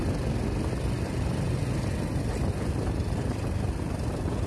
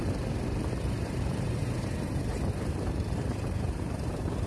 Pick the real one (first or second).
first